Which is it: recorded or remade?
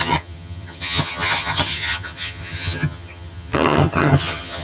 remade